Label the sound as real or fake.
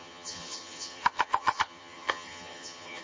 fake